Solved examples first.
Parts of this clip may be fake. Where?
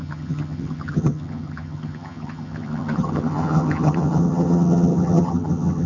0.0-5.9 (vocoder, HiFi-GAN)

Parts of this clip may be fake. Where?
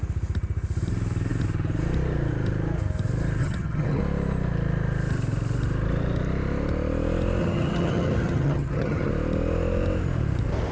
3.4-4.0 (vocoder, HiFi-GAN); 7.4-9.1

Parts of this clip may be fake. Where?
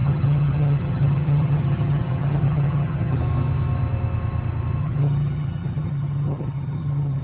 0.0-3.2 (vocoder, HiFi-GAN); 4.8-7.2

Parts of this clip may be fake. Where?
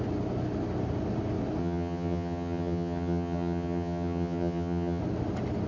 1.6-5.0 (vocoder, HiFi-GAN)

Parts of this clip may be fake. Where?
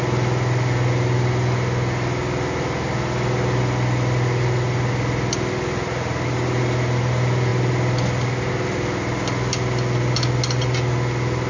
none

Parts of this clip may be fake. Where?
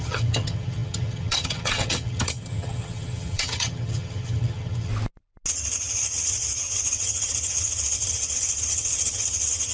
0.0-4.9 (vocoder, HiFi-GAN); 5.5-9.7